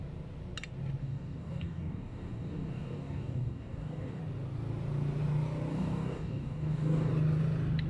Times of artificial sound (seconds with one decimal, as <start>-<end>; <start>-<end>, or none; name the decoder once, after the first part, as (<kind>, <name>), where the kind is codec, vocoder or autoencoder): 1.0-4.2 (codec, DAC); 5.7-7.1